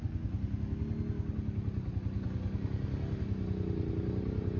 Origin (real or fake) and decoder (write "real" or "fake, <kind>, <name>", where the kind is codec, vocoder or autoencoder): real